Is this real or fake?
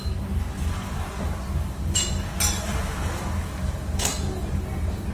real